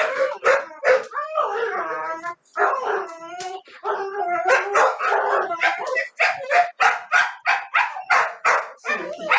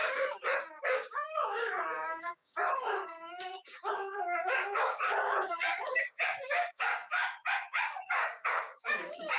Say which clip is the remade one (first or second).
second